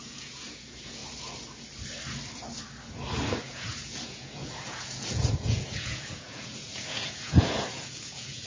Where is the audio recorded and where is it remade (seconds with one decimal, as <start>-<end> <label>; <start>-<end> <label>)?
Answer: 0.0-1.0 remade; 1.0-3.4 recorded; 3.4-8.5 remade